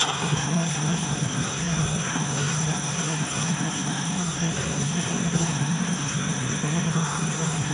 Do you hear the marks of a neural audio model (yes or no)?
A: yes